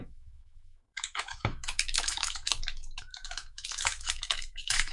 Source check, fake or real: fake